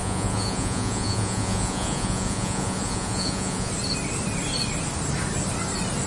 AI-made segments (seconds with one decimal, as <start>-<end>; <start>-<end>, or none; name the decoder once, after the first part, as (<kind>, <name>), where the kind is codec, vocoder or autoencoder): 0.0-3.7 (vocoder, Vocos)